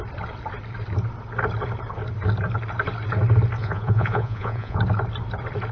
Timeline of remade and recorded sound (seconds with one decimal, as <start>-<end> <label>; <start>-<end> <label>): 0.0-3.6 recorded; 3.6-4.8 remade; 4.8-5.7 recorded